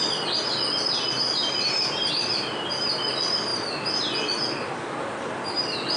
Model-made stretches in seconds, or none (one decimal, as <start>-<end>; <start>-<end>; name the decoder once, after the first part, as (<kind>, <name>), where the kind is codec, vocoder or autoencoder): none